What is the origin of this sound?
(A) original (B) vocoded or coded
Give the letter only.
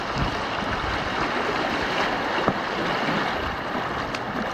A